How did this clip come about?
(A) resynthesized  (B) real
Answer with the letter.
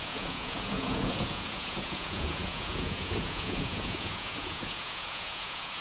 A